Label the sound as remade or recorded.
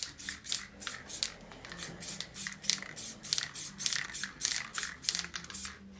recorded